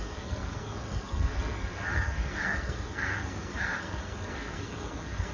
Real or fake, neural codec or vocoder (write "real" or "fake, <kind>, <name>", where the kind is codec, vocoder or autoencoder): fake, codec, SNAC